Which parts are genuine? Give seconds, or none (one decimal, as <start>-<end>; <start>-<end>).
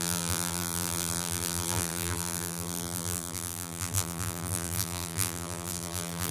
none